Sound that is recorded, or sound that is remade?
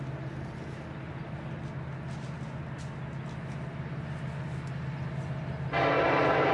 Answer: recorded